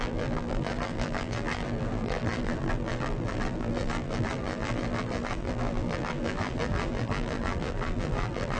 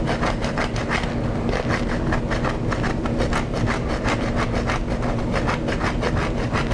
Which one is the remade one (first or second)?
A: first